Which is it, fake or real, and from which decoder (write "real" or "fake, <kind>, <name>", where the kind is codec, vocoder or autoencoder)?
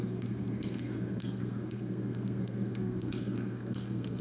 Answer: fake, codec, SNAC